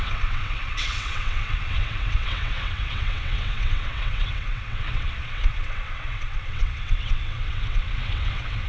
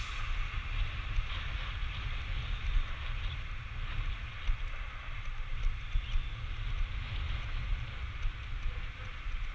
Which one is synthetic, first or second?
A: first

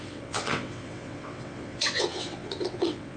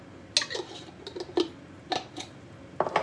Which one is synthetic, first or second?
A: first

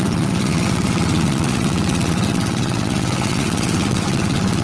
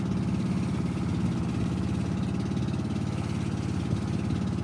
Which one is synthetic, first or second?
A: first